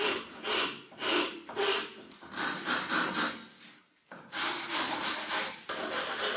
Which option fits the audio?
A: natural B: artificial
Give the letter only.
A